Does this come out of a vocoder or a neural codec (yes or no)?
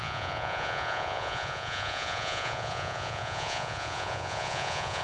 yes